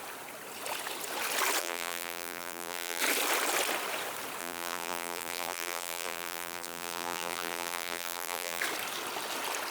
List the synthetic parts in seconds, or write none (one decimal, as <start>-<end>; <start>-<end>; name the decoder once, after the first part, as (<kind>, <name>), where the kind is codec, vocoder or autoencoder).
1.6-3.0 (vocoder, BigVGAN v2); 4.4-8.6